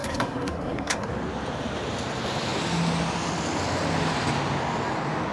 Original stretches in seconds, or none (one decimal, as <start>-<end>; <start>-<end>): 1.1-5.3